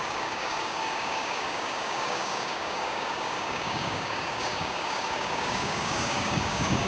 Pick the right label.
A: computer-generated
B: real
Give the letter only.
A